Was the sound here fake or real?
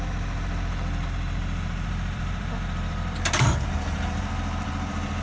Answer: fake